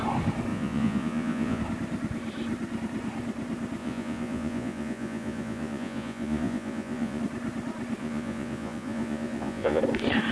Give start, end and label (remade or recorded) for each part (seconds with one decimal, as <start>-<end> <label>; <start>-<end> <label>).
0.0-0.5 recorded; 0.5-1.6 remade; 1.6-3.8 recorded; 3.8-7.2 remade; 7.2-8.0 recorded; 8.0-9.8 remade; 9.8-10.3 recorded